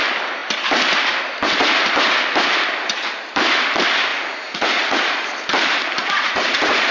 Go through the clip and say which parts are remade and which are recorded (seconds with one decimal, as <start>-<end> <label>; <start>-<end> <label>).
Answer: 0.0-4.1 recorded; 4.1-5.0 remade; 5.0-6.0 recorded; 6.0-6.9 remade